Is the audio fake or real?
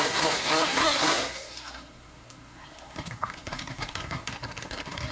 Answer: fake